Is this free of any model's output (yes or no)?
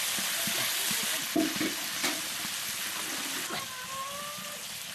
yes